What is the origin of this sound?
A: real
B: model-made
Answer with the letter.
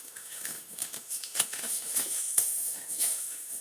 B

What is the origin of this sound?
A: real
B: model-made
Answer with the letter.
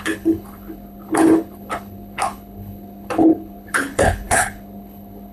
B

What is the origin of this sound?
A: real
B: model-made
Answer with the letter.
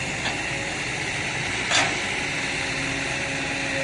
A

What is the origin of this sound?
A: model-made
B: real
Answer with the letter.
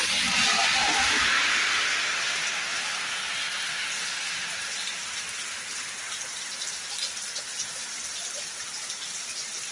B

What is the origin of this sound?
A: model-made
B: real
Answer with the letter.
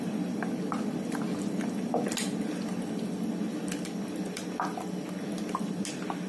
B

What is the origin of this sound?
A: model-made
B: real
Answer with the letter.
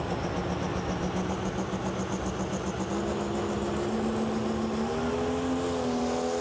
B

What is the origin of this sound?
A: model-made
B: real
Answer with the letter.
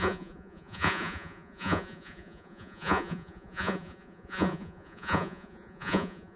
A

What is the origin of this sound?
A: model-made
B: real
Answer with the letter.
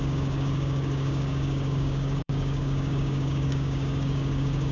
A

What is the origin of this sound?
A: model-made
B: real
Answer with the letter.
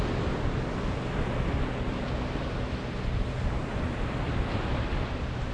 B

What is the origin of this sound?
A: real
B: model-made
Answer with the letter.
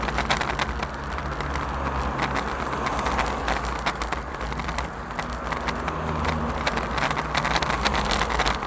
A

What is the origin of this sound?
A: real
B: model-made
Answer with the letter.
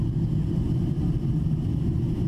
A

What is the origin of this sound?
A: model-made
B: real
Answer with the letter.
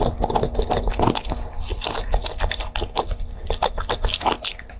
B